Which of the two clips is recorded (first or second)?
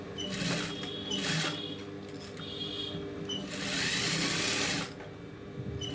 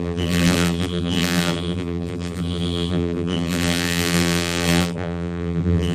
first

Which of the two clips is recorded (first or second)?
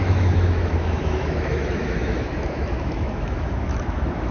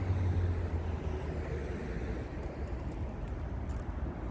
second